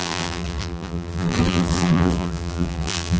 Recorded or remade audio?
remade